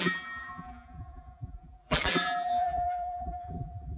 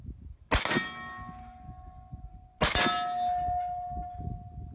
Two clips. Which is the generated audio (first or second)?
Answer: first